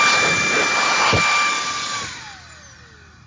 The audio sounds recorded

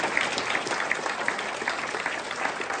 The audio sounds recorded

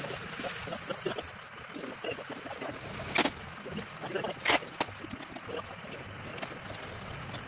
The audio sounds recorded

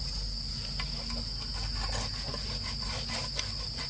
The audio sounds recorded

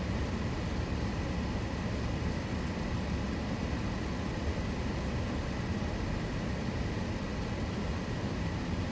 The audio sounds recorded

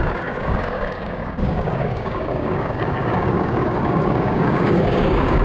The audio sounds remade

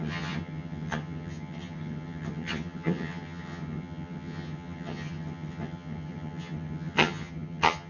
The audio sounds remade